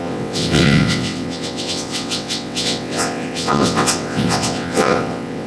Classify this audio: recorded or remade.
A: remade